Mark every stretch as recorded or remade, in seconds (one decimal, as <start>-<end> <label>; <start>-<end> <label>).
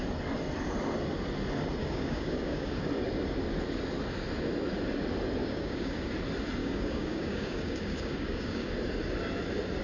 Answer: 0.0-1.8 recorded; 1.8-2.8 remade; 2.8-5.4 recorded; 5.4-6.1 remade; 6.1-6.6 recorded; 6.6-8.7 remade; 8.7-9.8 recorded